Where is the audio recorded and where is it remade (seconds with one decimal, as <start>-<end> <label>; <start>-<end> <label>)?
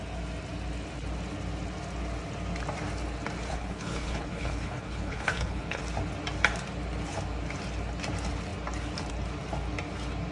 0.0-3.5 recorded; 3.5-5.8 remade; 5.8-10.3 recorded